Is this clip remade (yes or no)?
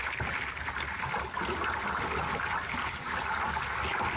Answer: no